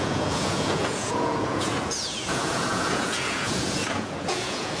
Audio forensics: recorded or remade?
remade